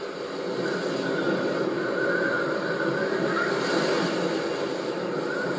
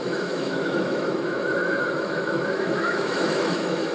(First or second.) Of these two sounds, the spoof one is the second